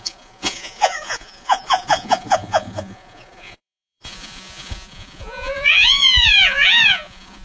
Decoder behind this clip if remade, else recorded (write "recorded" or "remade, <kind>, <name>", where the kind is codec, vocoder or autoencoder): remade, vocoder, Vocos